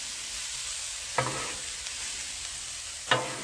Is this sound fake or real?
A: real